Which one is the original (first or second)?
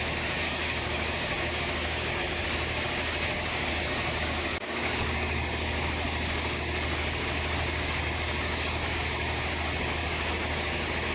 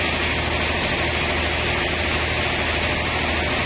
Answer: second